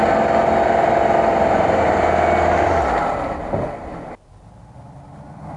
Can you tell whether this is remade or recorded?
recorded